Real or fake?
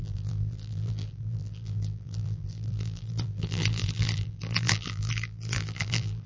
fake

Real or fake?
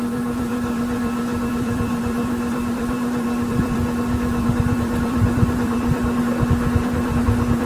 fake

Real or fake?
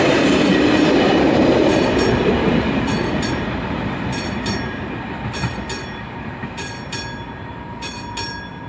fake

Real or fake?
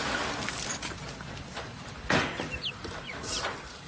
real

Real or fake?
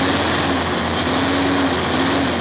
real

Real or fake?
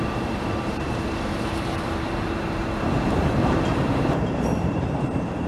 fake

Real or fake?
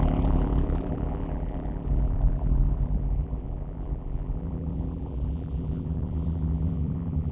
fake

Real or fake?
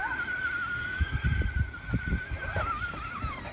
real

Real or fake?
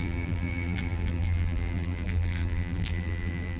fake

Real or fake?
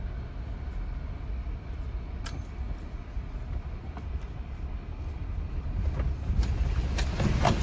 real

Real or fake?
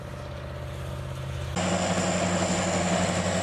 real